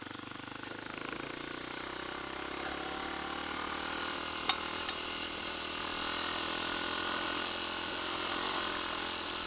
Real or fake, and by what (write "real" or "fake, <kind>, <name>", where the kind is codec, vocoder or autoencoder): real